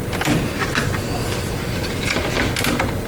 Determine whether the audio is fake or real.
real